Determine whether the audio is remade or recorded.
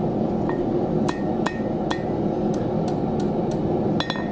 recorded